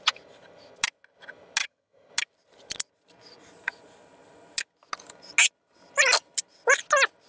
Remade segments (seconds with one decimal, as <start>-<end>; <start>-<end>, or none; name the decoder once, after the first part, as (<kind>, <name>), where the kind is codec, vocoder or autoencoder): 1.6-2.1 (vocoder, HiFi-GAN)